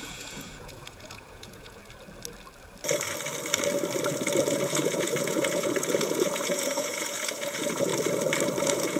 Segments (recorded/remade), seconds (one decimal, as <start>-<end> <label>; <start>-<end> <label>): 0.0-1.8 remade; 1.8-4.5 recorded; 4.5-7.9 remade; 7.9-8.6 recorded; 8.6-9.0 remade